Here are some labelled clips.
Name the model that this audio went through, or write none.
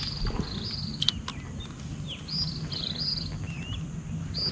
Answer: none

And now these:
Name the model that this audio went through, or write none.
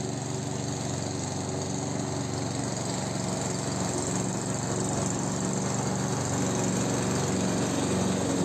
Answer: none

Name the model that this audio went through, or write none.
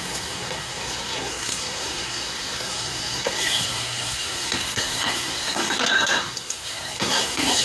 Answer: codec, SNAC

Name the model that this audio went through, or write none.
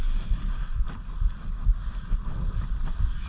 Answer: none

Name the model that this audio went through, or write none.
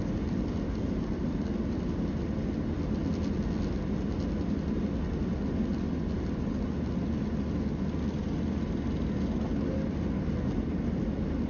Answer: none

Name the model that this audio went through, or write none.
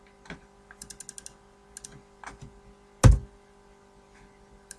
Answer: none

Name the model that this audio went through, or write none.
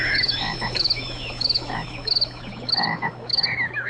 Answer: autoencoder, DAC-VAE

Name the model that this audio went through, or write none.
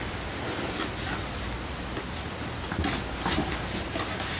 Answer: none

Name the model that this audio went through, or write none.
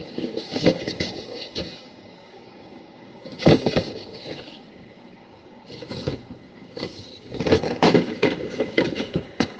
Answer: codec, DAC